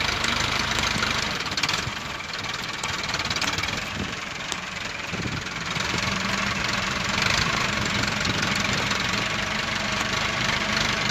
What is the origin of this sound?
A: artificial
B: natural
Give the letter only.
A